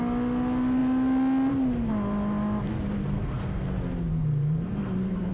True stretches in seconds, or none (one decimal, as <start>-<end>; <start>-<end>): 0.0-3.0; 3.6-4.1